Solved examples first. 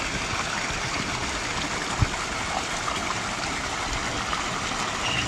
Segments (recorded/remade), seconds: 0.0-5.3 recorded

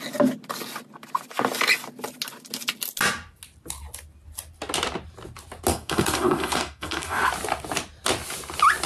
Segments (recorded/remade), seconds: 0.0-5.7 recorded; 5.7-7.3 remade; 7.3-8.9 recorded

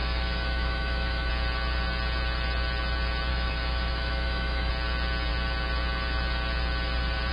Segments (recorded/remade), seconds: 0.0-1.3 remade; 1.3-3.3 recorded; 3.3-4.7 remade; 4.7-7.3 recorded

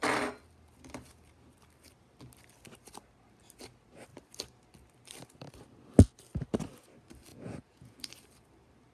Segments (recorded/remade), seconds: 0.0-7.3 recorded; 7.3-8.0 remade; 8.0-8.9 recorded

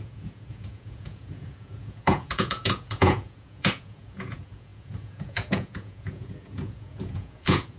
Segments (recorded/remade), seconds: 0.0-7.8 remade